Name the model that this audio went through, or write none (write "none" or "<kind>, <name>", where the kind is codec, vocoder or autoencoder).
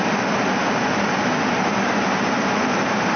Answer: none